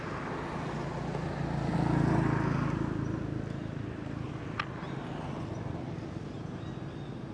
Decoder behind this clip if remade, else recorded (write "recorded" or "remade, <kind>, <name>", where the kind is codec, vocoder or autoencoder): recorded